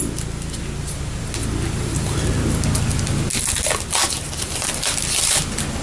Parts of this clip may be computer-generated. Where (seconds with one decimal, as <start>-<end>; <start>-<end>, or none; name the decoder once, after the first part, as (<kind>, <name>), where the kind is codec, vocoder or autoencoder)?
none